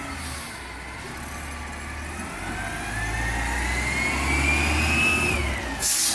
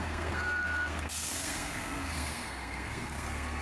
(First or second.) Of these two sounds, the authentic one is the first